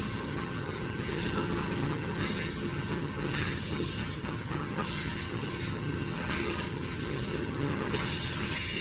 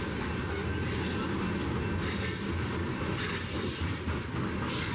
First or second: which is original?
second